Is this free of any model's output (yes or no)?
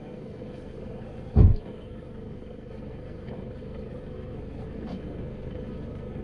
no